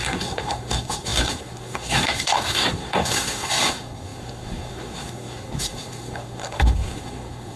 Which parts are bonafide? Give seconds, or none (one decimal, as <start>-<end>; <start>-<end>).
none